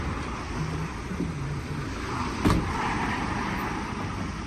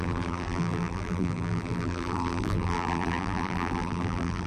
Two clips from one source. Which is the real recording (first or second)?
first